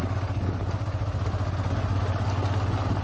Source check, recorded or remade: recorded